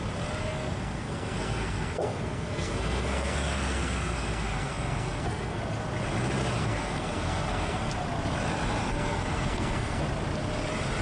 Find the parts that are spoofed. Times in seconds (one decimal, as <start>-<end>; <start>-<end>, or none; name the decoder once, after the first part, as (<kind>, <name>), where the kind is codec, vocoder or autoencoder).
0.4-5.6 (codec, SNAC); 6.6-7.9; 8.8-10.0